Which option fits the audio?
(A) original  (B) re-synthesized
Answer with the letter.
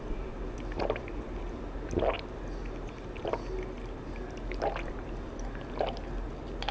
A